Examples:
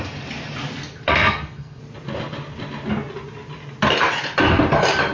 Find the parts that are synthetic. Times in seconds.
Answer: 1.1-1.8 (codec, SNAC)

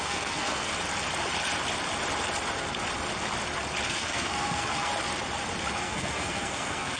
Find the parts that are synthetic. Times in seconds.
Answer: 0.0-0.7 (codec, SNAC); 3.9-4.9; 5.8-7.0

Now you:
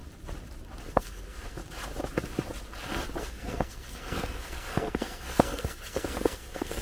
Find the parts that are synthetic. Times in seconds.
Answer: 0.9-1.6 (codec, SNAC); 3.2-6.8